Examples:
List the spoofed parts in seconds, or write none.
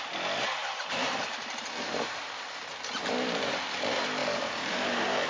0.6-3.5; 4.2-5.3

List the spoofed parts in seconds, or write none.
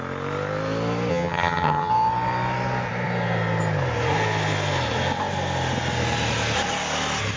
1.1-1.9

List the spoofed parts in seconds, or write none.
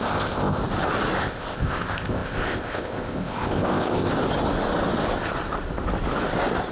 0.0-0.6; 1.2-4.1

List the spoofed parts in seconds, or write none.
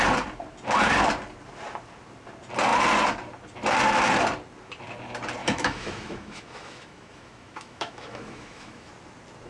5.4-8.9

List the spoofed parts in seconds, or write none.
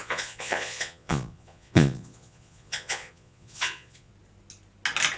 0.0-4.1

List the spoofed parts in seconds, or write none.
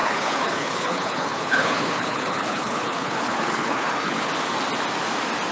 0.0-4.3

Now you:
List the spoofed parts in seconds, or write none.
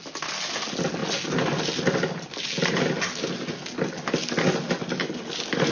none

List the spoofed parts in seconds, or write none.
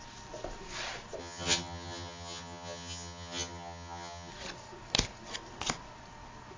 1.2-4.3